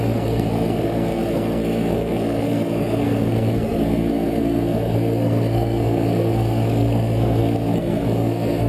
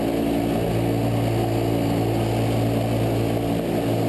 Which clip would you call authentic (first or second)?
second